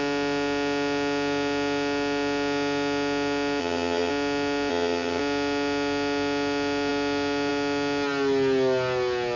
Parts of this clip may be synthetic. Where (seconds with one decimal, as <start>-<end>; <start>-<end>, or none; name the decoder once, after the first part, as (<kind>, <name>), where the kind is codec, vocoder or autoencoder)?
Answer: 3.6-4.1 (vocoder, HiFi-GAN); 4.7-5.2